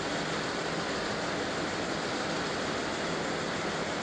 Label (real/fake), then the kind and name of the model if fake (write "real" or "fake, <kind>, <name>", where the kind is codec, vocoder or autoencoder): real